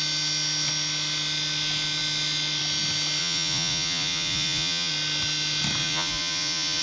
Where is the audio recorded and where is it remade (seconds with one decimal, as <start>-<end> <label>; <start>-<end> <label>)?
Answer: 0.0-3.2 recorded; 3.2-4.9 remade; 4.9-5.8 recorded; 5.8-6.8 remade